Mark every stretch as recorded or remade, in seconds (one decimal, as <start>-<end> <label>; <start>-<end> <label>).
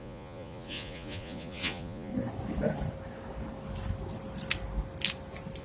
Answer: 0.0-2.1 remade; 2.1-5.6 recorded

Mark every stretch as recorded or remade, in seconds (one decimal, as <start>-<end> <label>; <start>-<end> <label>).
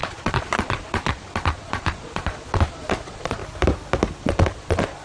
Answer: 0.0-3.4 remade; 3.4-4.2 recorded; 4.2-5.0 remade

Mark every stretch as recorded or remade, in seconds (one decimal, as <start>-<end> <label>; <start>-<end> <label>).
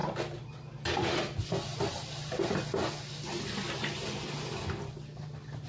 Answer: 0.0-5.7 recorded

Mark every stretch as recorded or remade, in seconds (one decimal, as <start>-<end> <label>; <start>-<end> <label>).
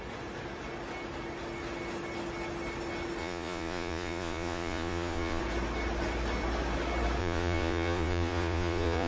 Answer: 0.0-3.2 recorded; 3.2-5.4 remade; 5.4-7.2 recorded; 7.2-9.1 remade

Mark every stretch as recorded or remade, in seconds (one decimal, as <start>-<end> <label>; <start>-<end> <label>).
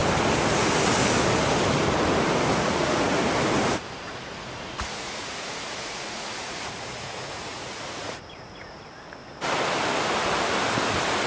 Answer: 0.0-2.5 recorded; 2.5-3.2 remade; 3.2-4.0 recorded; 4.0-8.8 remade; 8.8-11.3 recorded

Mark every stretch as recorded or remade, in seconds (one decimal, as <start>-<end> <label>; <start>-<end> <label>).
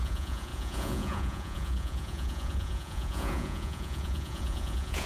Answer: 0.0-5.1 remade